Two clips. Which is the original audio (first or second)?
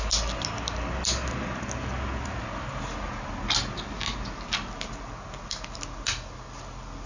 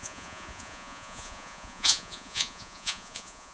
first